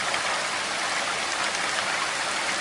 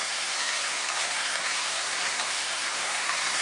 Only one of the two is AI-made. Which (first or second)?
second